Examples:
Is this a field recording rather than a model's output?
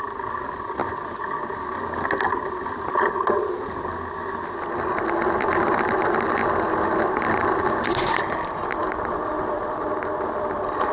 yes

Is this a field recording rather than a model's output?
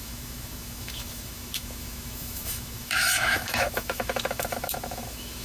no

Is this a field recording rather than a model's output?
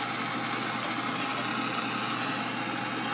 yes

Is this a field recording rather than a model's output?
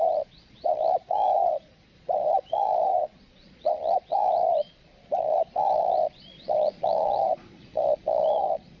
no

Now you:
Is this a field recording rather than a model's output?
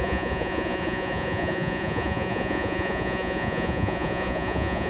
no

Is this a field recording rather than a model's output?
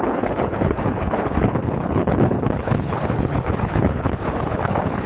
no